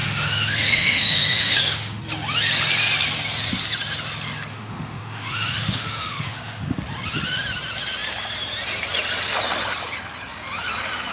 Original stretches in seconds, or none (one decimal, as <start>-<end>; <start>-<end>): 2.0-4.5; 6.8-11.1